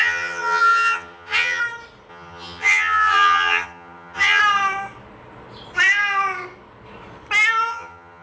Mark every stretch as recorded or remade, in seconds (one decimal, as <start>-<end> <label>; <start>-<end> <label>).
0.0-1.6 remade; 1.6-2.1 recorded; 2.1-4.4 remade; 4.4-7.7 recorded; 7.7-8.2 remade